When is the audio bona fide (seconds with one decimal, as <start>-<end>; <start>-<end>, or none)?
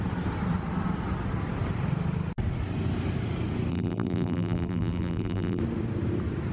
0.0-3.7; 5.6-6.5